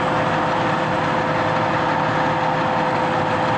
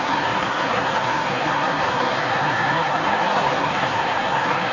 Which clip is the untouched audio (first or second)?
first